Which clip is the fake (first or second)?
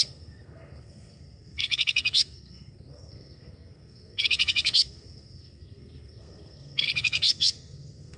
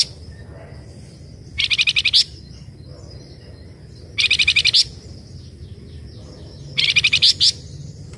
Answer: first